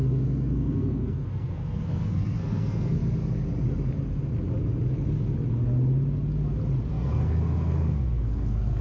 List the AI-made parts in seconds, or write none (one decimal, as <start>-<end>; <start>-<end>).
0.0-3.0; 6.9-8.8